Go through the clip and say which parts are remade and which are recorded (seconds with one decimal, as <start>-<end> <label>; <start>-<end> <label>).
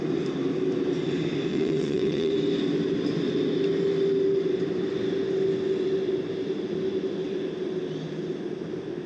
0.0-1.5 recorded; 1.5-2.3 remade; 2.3-9.1 recorded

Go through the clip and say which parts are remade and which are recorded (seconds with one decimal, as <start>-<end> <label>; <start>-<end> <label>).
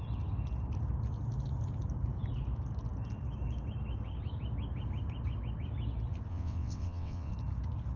0.0-6.3 recorded; 6.3-7.3 remade; 7.3-8.0 recorded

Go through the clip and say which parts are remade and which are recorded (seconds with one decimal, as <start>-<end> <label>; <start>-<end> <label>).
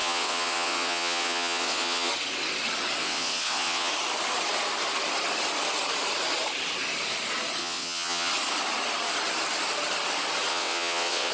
0.0-2.1 remade; 2.1-3.0 recorded; 3.0-3.9 remade; 3.9-7.6 recorded; 7.6-8.3 remade; 8.3-10.5 recorded; 10.5-11.3 remade